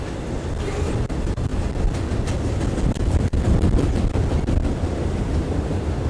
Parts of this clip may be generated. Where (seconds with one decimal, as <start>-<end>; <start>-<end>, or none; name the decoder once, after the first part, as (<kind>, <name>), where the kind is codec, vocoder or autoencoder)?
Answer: none